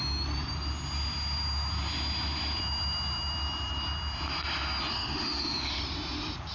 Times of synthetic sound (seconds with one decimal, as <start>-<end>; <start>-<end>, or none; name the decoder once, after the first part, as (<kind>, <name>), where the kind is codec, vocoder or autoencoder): 4.9-5.8 (autoencoder, DAC-VAE)

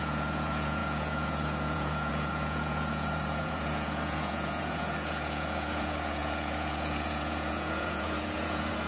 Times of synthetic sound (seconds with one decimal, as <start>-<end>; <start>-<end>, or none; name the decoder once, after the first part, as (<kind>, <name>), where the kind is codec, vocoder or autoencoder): 0.0-8.9 (vocoder, Vocos)

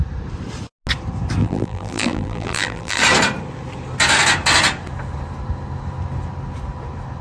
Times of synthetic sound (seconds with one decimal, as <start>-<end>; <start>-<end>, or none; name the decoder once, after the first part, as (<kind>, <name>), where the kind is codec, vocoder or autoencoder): 1.4-3.0 (vocoder, BigVGAN v2)

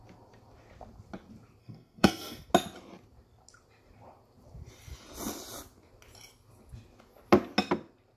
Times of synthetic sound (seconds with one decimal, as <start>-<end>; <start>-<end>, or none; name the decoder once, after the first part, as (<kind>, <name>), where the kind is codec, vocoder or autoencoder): 1.6-2.5 (codec, SNAC)

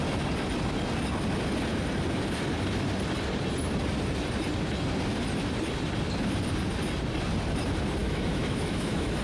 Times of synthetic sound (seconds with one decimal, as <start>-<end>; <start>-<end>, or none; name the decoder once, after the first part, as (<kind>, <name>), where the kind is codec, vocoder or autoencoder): 8.0-9.2 (autoencoder, DAC-VAE)

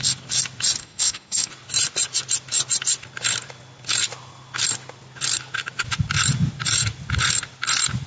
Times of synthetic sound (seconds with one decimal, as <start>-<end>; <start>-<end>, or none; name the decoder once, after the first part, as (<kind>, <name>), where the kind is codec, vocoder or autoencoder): 0.8-1.5 (codec, SNAC)

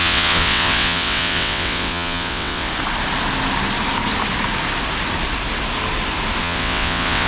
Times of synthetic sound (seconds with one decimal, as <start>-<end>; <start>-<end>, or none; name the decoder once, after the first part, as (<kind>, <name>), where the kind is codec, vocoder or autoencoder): 0.0-2.7 (vocoder, WaveNeXt); 6.4-7.3